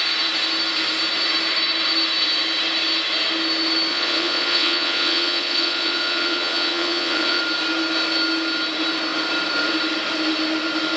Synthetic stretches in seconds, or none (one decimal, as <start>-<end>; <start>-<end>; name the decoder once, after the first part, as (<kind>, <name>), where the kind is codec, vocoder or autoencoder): 3.9-7.4 (vocoder, Vocos)